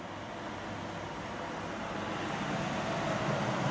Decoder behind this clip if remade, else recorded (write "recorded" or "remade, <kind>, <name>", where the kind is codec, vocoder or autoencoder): recorded